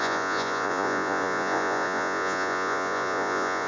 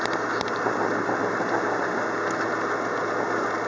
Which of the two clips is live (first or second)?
second